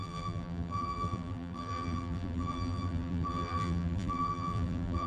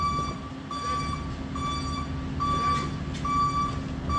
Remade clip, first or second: first